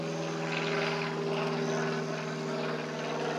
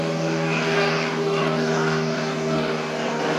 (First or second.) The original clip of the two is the first